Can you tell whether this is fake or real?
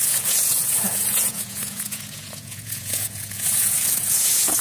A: fake